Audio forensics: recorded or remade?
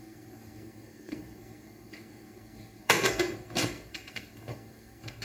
remade